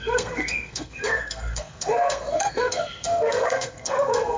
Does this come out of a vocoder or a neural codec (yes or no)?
yes